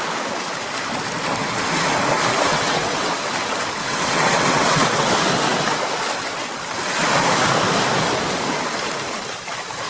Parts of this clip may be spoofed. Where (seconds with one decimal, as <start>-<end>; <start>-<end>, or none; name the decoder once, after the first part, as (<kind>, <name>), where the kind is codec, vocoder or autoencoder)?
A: 2.5-3.1 (vocoder, WaveNeXt); 3.8-5.1